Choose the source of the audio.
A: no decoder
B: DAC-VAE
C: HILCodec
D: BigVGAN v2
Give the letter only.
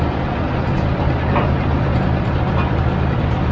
A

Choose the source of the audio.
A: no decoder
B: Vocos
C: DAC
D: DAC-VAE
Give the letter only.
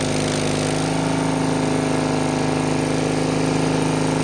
A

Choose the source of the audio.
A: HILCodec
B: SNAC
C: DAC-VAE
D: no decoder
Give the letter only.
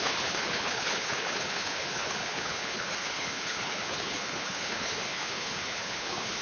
A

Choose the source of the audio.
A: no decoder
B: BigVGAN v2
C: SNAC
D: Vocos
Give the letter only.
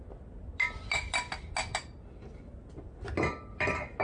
A